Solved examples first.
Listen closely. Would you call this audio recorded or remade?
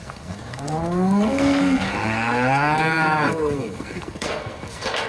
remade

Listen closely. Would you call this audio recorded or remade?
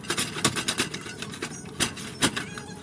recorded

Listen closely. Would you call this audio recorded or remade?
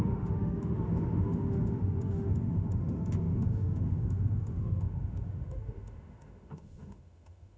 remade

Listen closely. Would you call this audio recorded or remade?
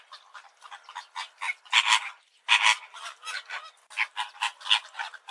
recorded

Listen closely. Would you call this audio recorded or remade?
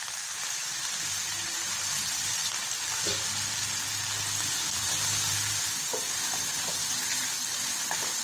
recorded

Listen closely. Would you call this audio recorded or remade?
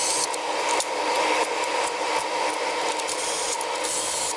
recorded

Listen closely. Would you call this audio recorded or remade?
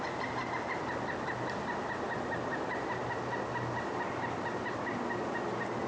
recorded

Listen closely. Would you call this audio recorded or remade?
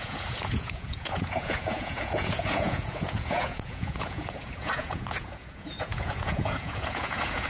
remade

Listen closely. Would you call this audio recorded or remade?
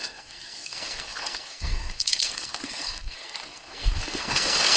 remade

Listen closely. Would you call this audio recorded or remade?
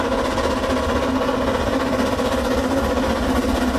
recorded